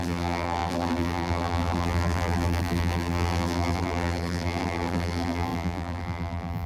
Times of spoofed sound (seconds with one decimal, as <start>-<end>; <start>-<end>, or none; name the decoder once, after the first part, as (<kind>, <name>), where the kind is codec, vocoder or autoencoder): 0.0-6.7 (vocoder, BigVGAN v2)